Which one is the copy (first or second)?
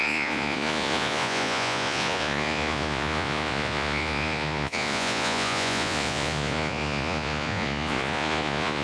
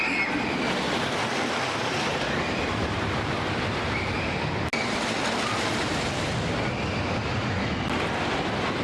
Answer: first